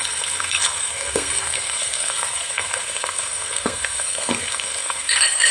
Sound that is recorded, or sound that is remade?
remade